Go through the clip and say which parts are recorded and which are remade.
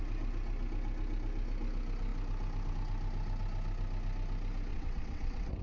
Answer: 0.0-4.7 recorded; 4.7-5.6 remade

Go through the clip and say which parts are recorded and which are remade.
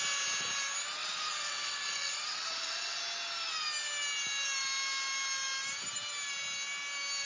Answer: 0.0-1.0 recorded; 1.0-3.0 remade; 3.0-7.3 recorded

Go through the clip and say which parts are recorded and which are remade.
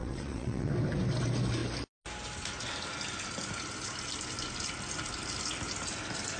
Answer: 0.0-0.7 remade; 0.7-6.4 recorded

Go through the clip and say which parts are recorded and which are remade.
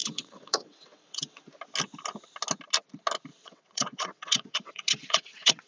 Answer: 0.0-1.5 remade; 1.5-3.3 recorded; 3.3-5.7 remade